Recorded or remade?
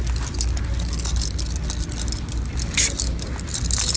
recorded